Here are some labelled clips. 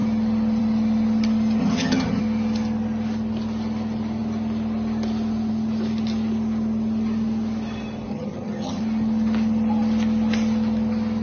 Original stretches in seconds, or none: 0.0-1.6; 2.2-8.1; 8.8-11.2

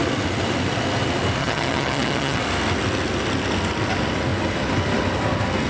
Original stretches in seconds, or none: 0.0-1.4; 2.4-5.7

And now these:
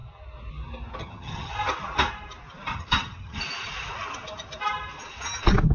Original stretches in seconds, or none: 0.0-1.0; 1.5-2.7; 3.4-5.7